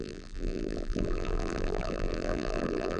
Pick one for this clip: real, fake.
fake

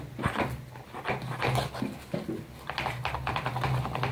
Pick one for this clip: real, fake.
real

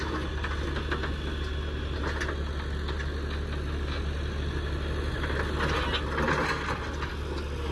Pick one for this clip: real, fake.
real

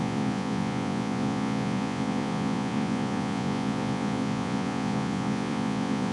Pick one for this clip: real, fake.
fake